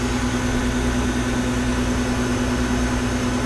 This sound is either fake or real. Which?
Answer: real